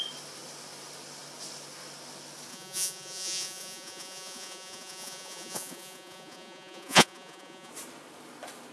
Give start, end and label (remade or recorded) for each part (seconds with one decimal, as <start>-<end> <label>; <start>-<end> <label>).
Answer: 0.0-2.5 recorded; 2.5-7.7 remade; 7.7-8.7 recorded